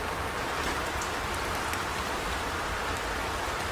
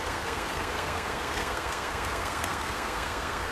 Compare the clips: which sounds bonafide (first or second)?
first